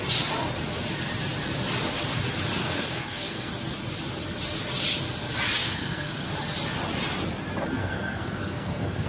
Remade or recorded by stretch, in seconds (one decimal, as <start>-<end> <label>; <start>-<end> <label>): 0.0-2.6 recorded; 2.6-3.5 remade; 3.5-5.6 recorded; 5.6-6.3 remade; 6.3-7.8 recorded; 7.8-9.1 remade